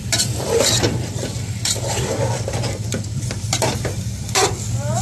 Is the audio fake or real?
fake